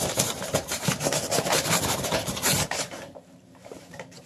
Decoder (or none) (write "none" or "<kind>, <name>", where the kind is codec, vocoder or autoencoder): vocoder, BigVGAN v2